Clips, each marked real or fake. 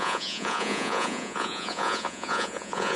fake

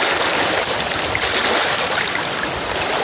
real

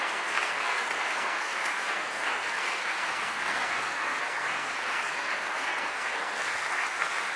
fake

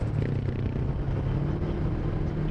real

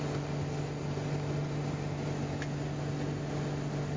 real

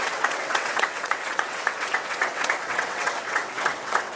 fake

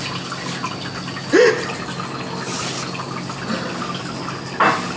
real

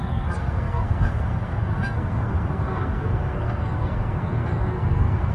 fake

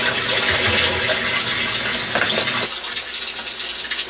real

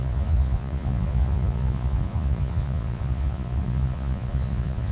fake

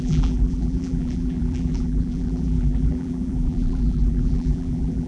fake